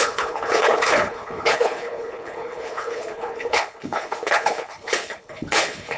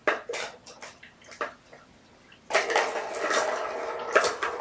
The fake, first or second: first